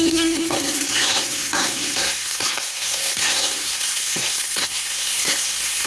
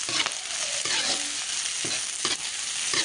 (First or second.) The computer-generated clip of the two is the first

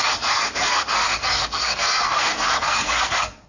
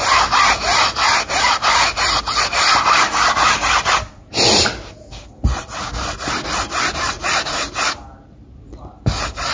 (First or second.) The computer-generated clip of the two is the first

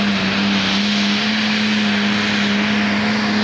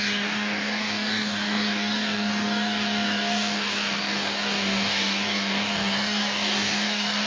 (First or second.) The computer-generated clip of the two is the second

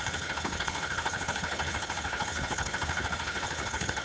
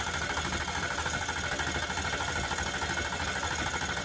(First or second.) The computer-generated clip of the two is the first